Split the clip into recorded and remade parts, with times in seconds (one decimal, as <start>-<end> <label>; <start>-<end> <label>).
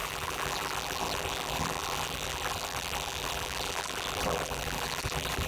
0.0-5.5 remade